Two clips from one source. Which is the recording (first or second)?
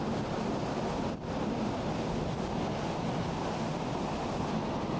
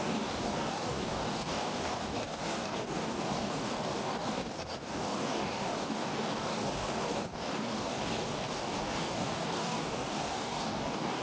first